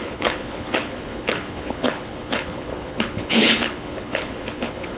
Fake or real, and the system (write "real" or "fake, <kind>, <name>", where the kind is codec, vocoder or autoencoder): fake, codec, HILCodec